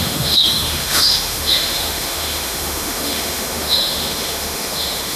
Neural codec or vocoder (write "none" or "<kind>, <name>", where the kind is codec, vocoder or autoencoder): autoencoder, DAC-VAE